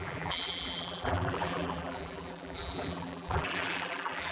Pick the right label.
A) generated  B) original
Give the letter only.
A